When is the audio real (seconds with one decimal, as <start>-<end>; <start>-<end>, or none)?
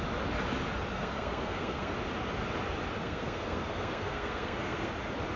0.0-0.9; 1.9-3.0; 4.9-5.4